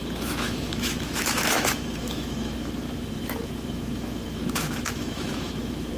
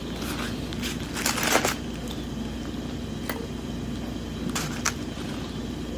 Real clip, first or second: second